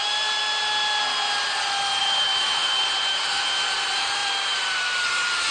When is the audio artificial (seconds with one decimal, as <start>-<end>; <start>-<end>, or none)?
0.0-0.4; 2.0-5.5